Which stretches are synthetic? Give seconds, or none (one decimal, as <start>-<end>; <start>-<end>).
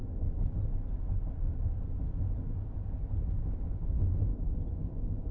none